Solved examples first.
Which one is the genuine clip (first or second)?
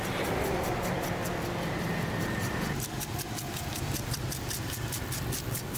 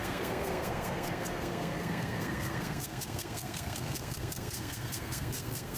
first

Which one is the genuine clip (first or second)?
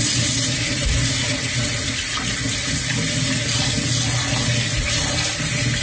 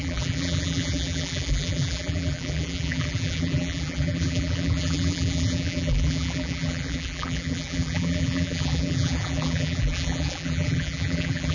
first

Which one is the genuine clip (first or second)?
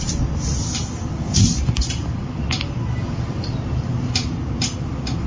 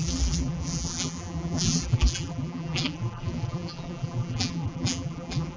first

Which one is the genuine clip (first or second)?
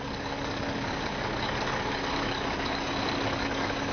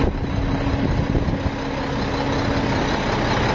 second